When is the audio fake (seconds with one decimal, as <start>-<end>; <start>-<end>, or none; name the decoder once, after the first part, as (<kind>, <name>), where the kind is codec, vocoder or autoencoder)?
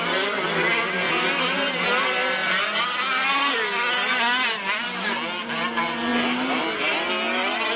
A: 2.4-3.5 (vocoder, BigVGAN v2)